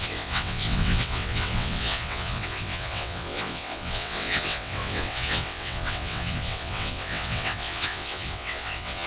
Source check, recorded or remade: remade